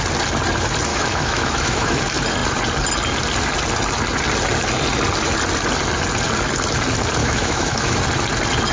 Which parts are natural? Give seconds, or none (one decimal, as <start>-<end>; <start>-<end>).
0.0-0.9; 2.0-7.2; 8.0-8.7